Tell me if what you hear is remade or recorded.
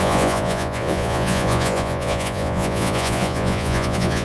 remade